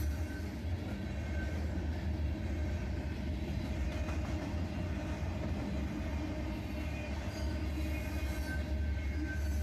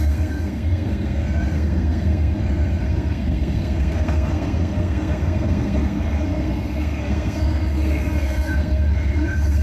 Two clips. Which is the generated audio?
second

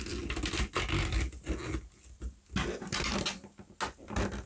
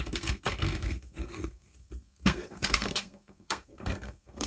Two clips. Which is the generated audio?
second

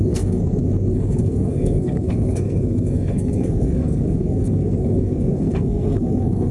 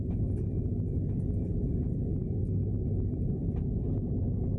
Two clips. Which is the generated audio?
first